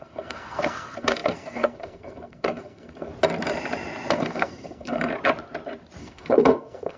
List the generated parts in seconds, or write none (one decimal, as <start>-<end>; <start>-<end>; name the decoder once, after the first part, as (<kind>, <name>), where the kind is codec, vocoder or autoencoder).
0.0-3.1 (codec, SNAC); 4.1-5.1; 6.0-7.0